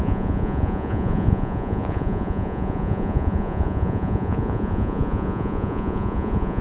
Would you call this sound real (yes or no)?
no